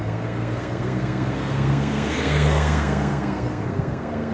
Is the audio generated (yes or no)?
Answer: yes